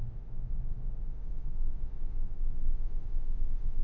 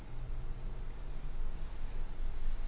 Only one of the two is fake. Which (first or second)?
first